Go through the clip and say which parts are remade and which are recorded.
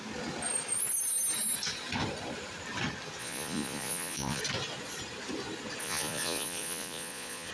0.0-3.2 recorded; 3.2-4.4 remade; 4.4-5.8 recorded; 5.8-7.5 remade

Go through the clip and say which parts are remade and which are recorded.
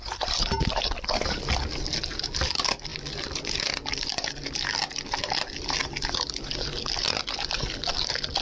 0.0-8.4 recorded